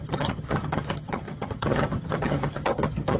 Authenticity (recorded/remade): remade